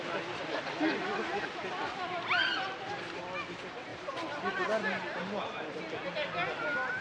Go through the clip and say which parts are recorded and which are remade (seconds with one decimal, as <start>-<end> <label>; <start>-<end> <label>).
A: 0.0-0.4 recorded; 0.4-2.6 remade; 2.6-3.9 recorded; 3.9-5.0 remade; 5.0-7.0 recorded